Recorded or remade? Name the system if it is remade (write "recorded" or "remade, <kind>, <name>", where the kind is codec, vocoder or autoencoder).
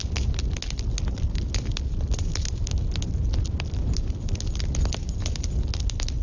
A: recorded